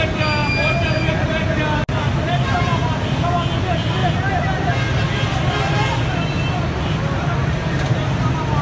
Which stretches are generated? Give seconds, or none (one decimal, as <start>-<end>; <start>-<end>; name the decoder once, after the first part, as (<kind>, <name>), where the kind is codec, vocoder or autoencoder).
2.1-3.1 (vocoder, BigVGAN v2)